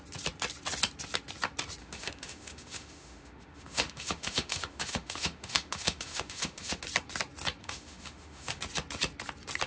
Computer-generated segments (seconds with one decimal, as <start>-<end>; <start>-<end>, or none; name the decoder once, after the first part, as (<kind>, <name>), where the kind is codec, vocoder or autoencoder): 1.8-6.8 (autoencoder, DAC-VAE); 7.6-8.6